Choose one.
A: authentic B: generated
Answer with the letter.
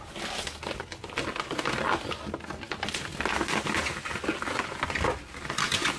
A